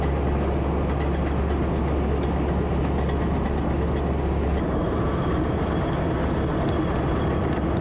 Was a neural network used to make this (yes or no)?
no